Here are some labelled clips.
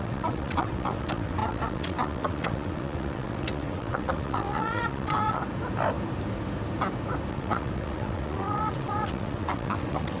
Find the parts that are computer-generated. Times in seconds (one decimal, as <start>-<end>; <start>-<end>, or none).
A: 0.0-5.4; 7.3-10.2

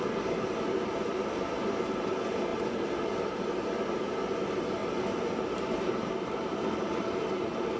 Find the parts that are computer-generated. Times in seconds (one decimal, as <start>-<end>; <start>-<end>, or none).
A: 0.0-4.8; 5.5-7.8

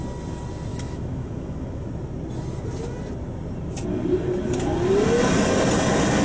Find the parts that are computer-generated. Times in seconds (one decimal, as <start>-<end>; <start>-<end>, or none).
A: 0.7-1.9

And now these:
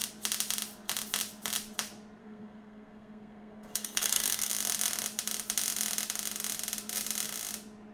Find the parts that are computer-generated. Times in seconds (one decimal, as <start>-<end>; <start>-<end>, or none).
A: 2.2-4.5

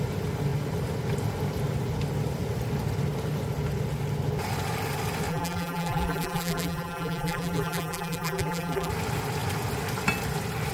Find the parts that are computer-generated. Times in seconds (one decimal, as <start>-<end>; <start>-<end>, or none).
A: 5.3-8.9

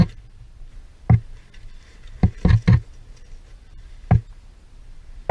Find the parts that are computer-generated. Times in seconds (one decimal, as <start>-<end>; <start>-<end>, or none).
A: 0.0-0.7

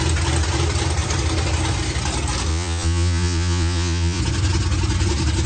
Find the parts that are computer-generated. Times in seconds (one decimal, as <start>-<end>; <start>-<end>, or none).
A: 2.5-4.2